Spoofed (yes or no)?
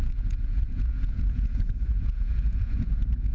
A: yes